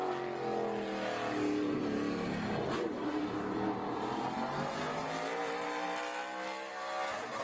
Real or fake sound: real